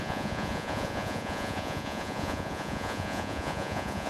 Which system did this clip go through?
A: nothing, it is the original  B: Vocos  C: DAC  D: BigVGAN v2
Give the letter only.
B